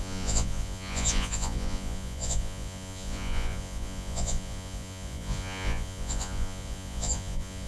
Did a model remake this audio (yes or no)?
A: yes